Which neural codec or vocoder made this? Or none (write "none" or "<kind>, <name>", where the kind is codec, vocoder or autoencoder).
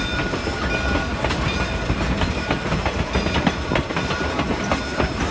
none